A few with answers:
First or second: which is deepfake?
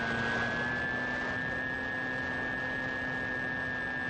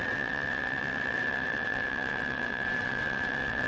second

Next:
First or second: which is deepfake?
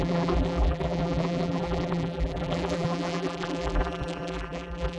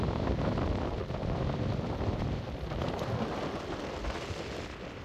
first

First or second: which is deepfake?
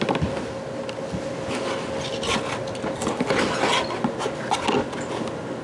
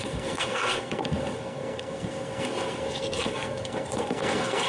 second